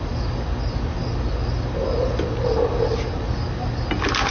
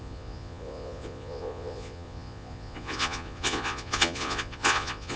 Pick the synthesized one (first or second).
second